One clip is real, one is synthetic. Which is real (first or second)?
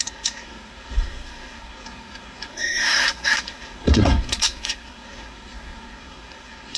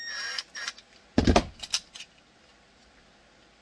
second